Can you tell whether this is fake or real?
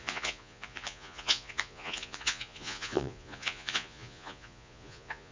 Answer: fake